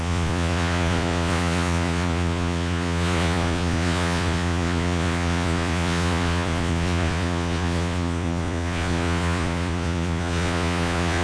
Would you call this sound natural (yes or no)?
no